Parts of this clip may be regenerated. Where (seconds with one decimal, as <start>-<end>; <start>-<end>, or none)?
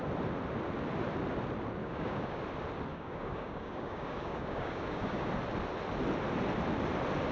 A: 1.8-2.4; 2.9-5.3